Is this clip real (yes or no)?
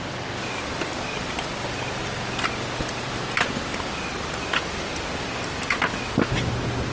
yes